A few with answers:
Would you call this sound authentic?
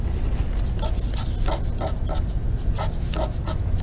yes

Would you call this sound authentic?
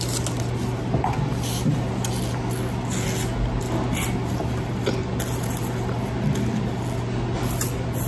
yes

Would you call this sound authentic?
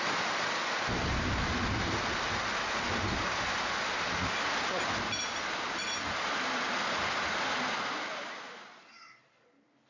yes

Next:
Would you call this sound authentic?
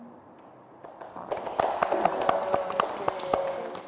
yes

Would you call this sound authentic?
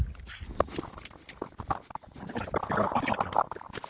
yes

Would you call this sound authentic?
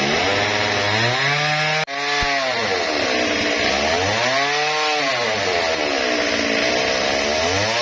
yes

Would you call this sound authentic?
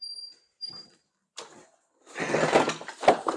yes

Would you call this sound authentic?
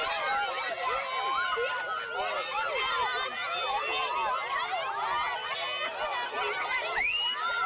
yes